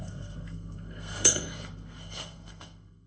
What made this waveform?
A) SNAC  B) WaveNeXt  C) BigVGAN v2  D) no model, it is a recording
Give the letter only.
A